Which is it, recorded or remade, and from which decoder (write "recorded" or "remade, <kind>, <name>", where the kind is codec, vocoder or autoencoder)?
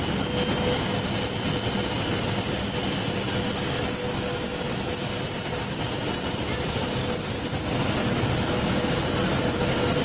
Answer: recorded